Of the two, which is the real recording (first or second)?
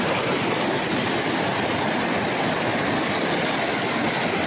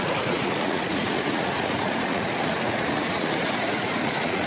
first